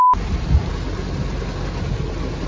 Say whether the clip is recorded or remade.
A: recorded